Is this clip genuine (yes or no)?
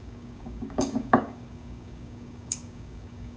no